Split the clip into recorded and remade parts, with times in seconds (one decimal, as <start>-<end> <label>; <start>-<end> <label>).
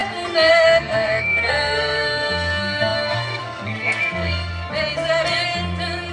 0.0-0.5 recorded; 0.5-4.5 remade; 4.5-6.1 recorded